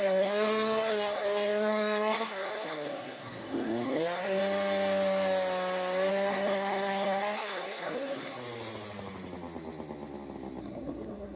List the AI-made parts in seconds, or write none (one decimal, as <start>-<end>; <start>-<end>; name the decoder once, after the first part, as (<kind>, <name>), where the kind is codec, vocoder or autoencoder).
0.0-4.4 (codec, SNAC); 6.1-8.4; 10.6-11.4